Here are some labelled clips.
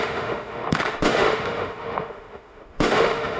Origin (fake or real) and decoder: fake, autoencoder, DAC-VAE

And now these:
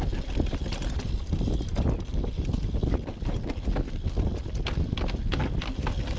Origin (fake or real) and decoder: real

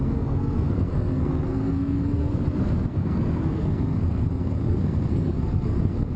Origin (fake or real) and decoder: fake, codec, SNAC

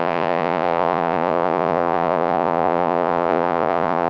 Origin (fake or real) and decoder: fake, vocoder, Vocos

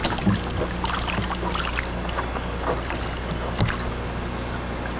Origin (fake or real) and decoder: real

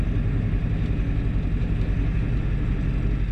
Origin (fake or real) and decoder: real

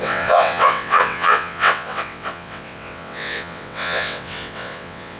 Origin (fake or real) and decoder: fake, vocoder, WaveNeXt